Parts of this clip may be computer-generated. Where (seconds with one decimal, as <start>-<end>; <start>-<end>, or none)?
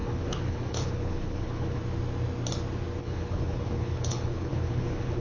0.0-1.8; 3.0-5.2